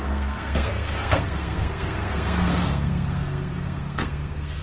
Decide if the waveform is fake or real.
fake